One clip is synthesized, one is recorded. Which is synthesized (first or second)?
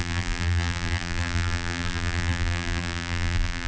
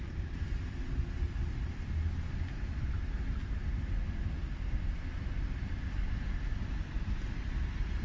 first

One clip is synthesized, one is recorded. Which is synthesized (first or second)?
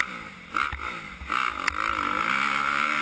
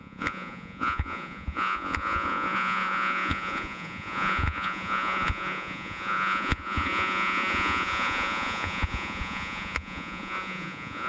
second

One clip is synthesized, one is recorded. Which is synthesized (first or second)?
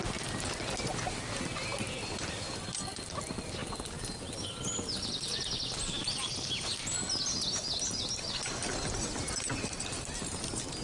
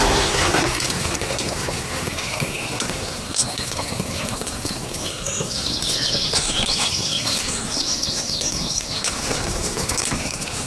second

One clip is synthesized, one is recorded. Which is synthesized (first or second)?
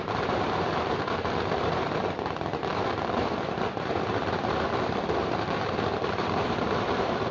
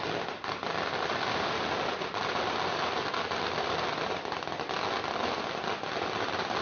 first